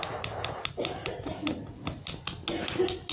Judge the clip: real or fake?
real